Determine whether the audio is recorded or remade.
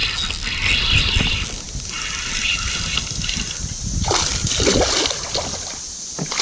recorded